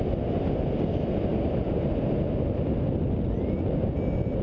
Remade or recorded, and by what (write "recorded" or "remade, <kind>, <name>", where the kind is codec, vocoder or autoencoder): recorded